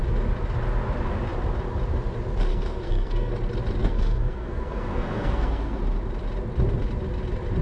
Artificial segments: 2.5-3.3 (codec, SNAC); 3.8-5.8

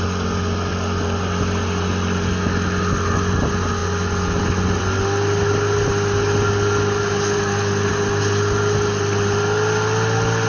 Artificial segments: none

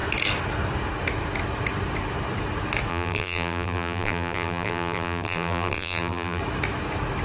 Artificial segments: 2.9-6.4 (vocoder, BigVGAN v2)

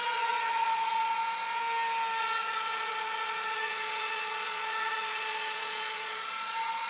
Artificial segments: 0.0-1.6 (vocoder, Vocos); 2.2-6.9

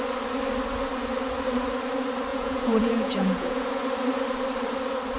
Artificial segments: 2.3-3.7 (vocoder, Vocos)

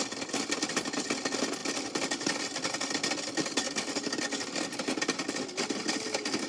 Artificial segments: none

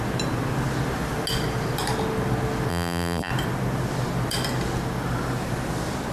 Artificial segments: 2.7-3.3 (vocoder, BigVGAN v2)

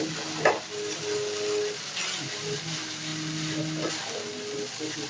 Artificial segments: none